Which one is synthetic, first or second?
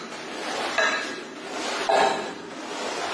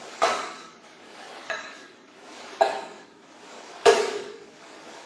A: second